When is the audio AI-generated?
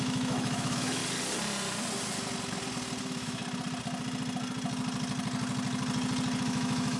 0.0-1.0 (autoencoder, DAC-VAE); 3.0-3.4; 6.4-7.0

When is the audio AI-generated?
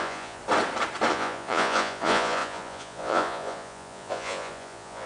0.0-0.4 (vocoder, Vocos); 1.1-5.1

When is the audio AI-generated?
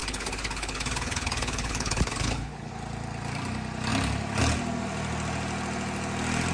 0.0-2.7 (codec, HILCodec)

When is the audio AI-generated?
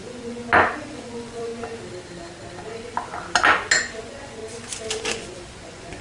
0.0-0.4 (vocoder, Vocos); 0.9-1.5; 4.0-4.4; 5.0-6.0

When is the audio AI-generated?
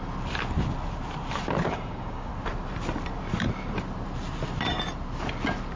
1.7-2.3 (codec, DAC)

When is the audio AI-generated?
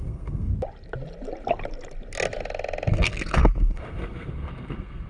0.0-0.5 (codec, SNAC); 2.9-5.1